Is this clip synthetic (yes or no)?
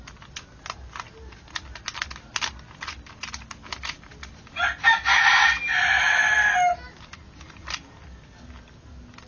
no